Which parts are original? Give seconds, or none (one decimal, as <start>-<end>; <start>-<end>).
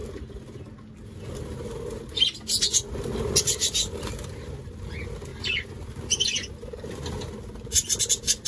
0.0-8.5